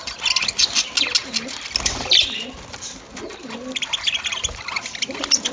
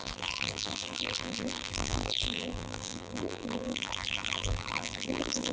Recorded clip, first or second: first